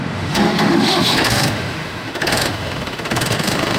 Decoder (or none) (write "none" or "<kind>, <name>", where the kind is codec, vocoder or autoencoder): autoencoder, DAC-VAE